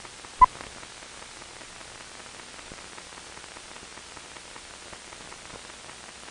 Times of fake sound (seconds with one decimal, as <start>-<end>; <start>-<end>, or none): none